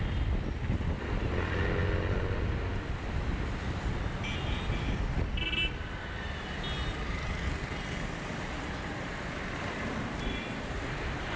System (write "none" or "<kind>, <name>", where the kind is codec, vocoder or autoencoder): none